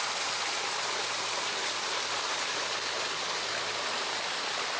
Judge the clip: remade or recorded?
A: recorded